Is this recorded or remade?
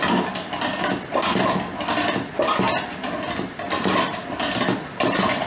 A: recorded